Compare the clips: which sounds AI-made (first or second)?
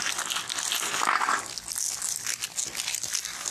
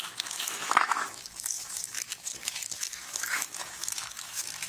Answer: second